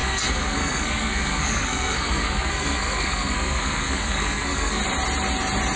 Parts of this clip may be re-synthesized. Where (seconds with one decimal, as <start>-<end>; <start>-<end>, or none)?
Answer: 0.0-4.8